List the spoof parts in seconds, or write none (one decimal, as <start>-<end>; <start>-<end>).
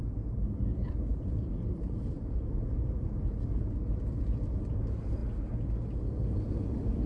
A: 1.1-3.8